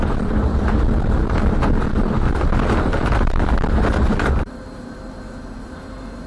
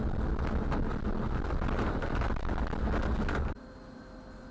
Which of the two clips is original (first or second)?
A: second